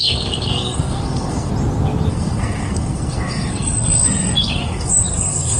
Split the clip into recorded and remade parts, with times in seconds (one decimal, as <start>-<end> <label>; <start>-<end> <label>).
0.0-1.5 remade; 1.5-2.1 recorded; 2.1-5.6 remade